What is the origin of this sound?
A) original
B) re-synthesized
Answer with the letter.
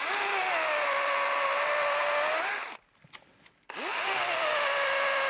A